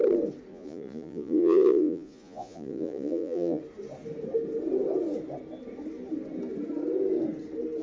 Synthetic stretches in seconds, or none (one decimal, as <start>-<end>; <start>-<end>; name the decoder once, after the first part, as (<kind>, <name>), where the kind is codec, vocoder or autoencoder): 0.5-3.6 (vocoder, Vocos)